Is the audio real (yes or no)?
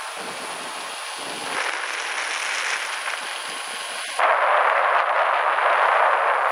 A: yes